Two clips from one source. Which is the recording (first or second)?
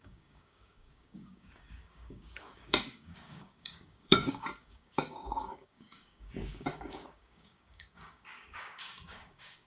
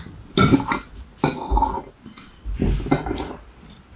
second